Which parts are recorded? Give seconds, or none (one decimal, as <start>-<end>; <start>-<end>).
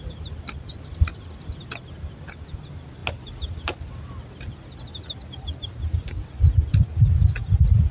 0.0-7.9